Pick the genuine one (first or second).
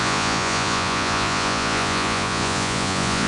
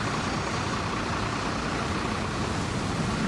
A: second